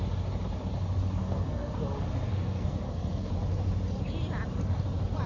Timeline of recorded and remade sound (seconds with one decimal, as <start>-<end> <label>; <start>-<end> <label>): 0.0-1.2 recorded; 1.2-1.7 remade; 1.7-2.3 recorded; 2.3-3.3 remade; 3.3-5.3 recorded